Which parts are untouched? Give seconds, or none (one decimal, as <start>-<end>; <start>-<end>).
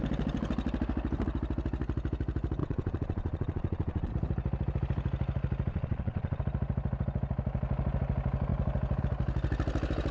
0.0-2.6; 4.1-5.7; 6.4-10.1